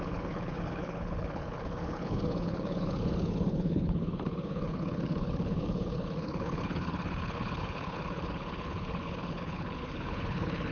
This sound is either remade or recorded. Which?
remade